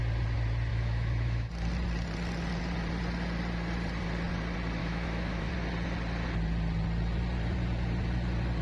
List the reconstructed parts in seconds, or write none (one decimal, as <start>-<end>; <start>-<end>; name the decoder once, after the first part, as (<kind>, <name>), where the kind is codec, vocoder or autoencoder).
0.7-1.5 (autoencoder, DAC-VAE); 4.8-5.5